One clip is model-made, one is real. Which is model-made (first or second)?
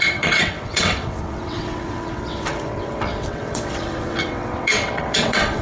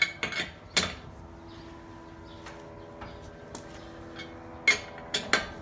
first